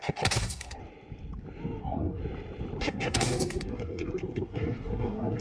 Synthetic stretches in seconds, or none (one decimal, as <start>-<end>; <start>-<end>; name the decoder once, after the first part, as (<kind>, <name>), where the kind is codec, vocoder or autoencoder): 0.0-0.8 (codec, SNAC); 1.8-2.2; 2.8-5.4